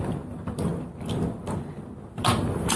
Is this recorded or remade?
recorded